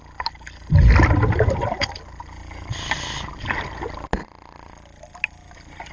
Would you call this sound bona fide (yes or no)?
yes